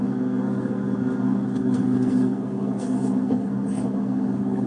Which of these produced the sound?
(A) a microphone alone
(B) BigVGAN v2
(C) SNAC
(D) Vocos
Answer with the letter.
C